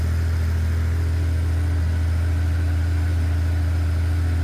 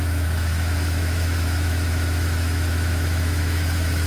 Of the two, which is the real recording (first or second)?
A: first